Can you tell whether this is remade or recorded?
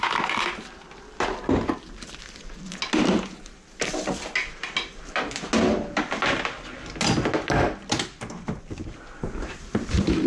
recorded